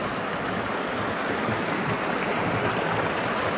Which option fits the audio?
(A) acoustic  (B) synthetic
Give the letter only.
A